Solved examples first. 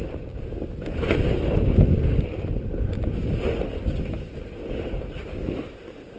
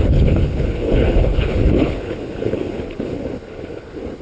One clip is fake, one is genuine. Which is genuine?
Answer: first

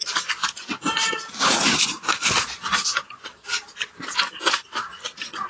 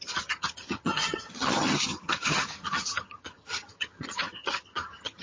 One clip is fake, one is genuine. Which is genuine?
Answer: first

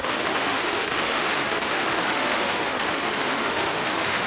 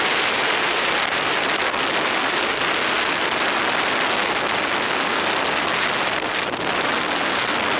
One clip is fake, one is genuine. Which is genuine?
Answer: second